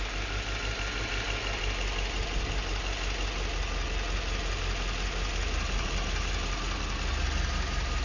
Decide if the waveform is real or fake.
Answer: real